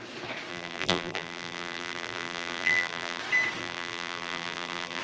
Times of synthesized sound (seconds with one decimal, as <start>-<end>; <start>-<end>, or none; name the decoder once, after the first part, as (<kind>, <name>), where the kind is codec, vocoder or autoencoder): 0.5-3.2 (vocoder, BigVGAN v2); 3.6-5.0